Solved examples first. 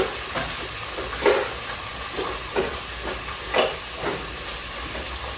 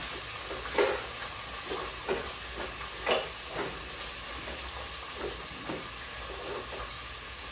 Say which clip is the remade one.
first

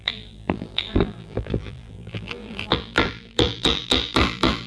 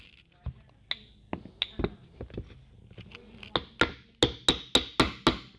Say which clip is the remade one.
first